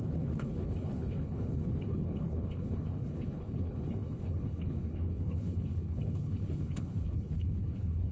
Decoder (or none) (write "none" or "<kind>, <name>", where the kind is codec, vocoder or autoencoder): codec, HILCodec